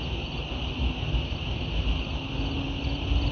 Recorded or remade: recorded